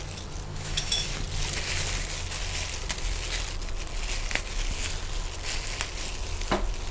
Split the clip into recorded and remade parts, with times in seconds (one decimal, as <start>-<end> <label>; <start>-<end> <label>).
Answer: 0.0-0.5 recorded; 0.5-1.1 remade; 1.1-6.9 recorded